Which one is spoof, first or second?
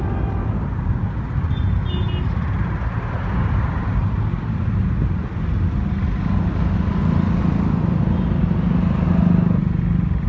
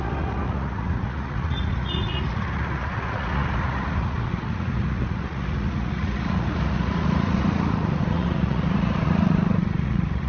second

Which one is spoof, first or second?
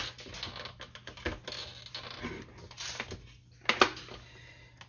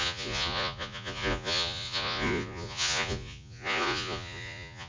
second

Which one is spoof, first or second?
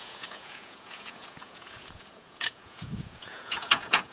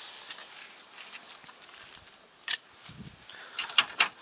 first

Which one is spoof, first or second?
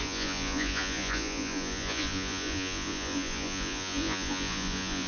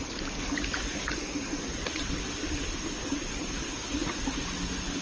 first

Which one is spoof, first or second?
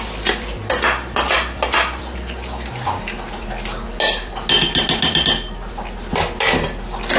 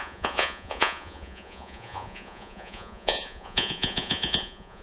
second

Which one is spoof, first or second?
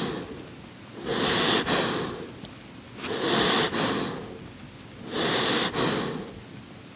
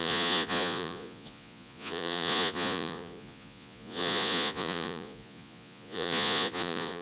second